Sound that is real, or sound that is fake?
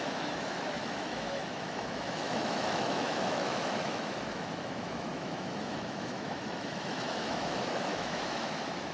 fake